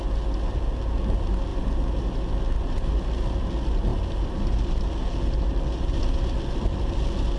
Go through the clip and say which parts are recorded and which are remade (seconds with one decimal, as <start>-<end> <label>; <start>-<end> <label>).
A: 0.0-7.4 recorded